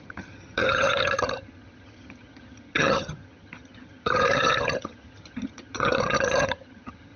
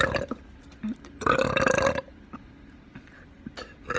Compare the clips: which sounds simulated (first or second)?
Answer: first